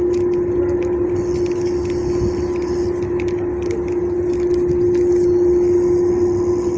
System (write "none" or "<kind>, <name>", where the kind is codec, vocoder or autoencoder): none